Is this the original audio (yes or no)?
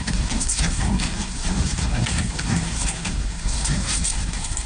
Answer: no